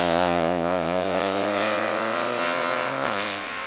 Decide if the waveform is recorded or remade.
remade